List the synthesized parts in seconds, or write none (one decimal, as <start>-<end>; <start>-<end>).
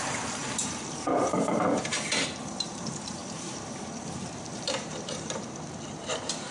0.0-6.5